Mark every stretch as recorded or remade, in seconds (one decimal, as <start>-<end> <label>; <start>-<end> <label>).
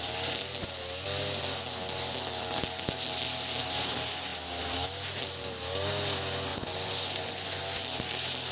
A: 0.0-6.5 recorded; 6.5-7.6 remade; 7.6-8.5 recorded